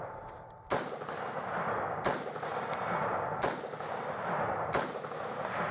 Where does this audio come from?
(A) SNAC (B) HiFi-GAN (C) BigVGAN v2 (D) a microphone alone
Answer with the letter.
D